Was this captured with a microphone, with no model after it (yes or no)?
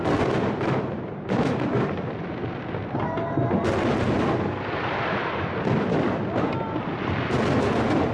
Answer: yes